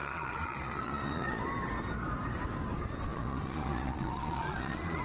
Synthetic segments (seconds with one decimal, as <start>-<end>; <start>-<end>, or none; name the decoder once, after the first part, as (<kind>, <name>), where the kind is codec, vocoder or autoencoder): 0.0-1.4 (vocoder, Vocos); 3.1-5.0